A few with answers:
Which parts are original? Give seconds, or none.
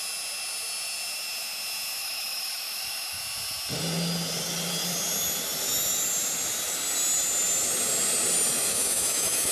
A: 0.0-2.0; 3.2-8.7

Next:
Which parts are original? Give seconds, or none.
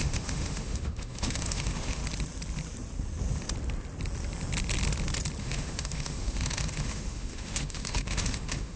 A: 2.0-5.4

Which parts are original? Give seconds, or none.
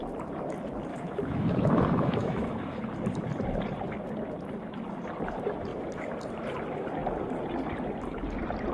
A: 0.0-0.9; 2.8-8.7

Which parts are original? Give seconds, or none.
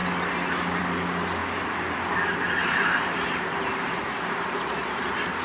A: 0.0-5.4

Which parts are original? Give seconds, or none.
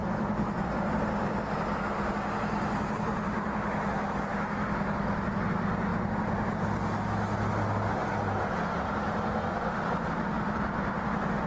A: 0.0-4.3; 5.3-11.5